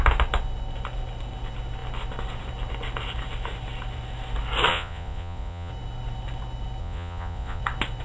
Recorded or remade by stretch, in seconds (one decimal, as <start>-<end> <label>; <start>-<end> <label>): 0.0-4.7 recorded; 4.7-5.7 remade; 5.7-6.8 recorded; 6.8-7.6 remade; 7.6-8.0 recorded